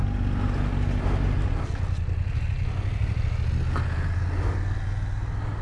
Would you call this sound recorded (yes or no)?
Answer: yes